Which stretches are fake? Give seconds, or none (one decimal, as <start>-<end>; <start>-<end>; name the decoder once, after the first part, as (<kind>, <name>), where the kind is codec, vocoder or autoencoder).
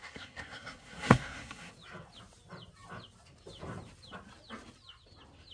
0.0-1.7 (codec, SNAC)